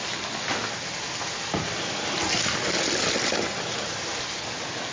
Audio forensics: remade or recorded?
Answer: recorded